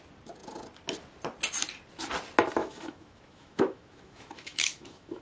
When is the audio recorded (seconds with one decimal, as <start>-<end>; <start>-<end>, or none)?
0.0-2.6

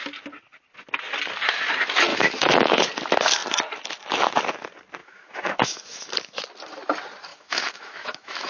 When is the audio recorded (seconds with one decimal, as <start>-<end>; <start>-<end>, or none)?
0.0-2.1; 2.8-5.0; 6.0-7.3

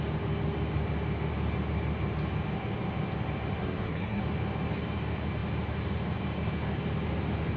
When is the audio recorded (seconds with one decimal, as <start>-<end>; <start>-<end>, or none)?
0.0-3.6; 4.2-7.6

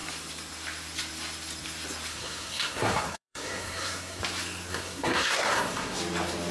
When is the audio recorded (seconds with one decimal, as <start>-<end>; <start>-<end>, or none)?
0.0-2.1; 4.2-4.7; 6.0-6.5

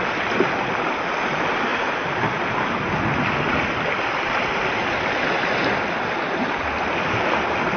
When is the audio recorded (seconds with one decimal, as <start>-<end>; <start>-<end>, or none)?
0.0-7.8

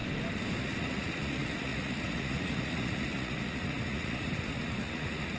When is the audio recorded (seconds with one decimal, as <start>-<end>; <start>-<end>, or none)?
0.0-0.6